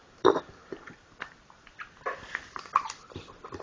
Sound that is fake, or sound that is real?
fake